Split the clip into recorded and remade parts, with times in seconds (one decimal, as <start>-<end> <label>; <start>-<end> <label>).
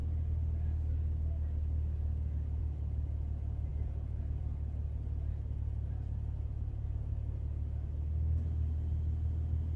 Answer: 0.0-9.8 recorded